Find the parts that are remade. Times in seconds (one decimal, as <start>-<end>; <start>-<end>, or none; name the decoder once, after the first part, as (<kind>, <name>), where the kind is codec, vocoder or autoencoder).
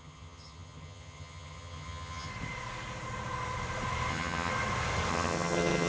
0.0-2.3 (vocoder, HiFi-GAN); 4.1-4.5; 5.1-5.9